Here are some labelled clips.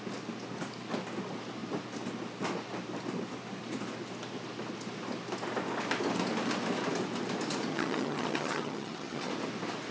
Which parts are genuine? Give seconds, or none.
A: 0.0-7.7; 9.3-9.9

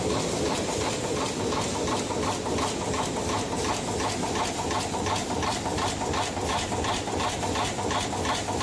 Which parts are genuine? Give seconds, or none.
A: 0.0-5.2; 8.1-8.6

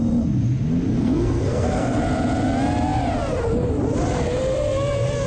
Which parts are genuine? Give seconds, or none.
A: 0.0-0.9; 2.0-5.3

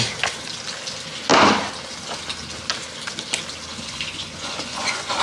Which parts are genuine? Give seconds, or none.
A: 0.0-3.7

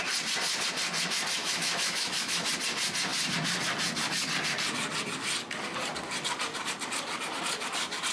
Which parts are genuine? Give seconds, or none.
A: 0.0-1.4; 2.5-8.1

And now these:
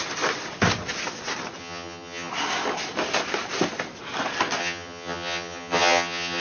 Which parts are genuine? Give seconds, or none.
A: 0.0-1.6; 2.3-4.6

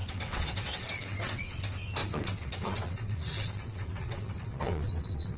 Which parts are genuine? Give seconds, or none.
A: 1.6-2.0